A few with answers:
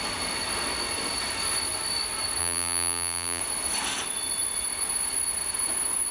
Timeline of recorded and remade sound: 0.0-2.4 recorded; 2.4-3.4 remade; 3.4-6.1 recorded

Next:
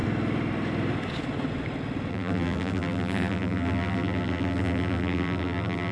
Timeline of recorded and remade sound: 0.0-2.1 recorded; 2.1-5.9 remade

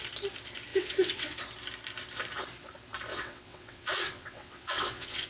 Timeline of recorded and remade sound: 0.0-0.7 recorded; 0.7-1.4 remade; 1.4-3.1 recorded; 3.1-5.3 remade

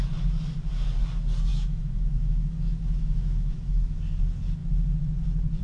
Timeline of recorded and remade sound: 0.0-1.5 recorded; 1.5-4.0 remade; 4.0-5.6 recorded

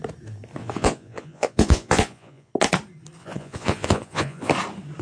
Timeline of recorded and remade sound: 0.0-0.6 recorded; 0.6-2.5 remade; 2.5-3.2 recorded; 3.2-4.5 remade; 4.5-5.0 recorded

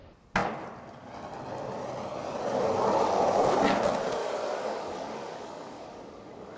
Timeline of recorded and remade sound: 0.0-4.2 recorded; 4.2-6.6 remade

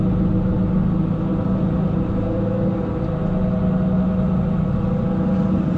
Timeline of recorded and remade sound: 0.0-5.8 recorded

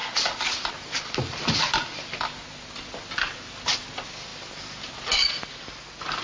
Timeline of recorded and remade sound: 0.0-6.2 recorded